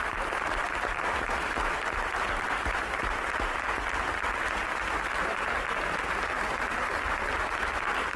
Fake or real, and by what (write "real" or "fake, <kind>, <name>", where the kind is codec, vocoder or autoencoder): real